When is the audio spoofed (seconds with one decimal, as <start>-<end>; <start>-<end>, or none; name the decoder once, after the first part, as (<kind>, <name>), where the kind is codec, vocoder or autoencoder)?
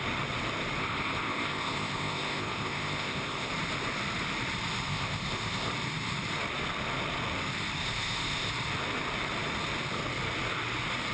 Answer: 0.8-3.5 (codec, ZipCodec); 4.9-5.7; 7.8-8.5